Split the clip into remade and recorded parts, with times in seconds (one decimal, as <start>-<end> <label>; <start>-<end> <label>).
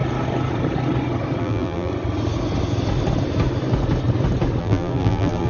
0.0-1.4 recorded; 1.4-1.9 remade; 1.9-4.6 recorded; 4.6-5.5 remade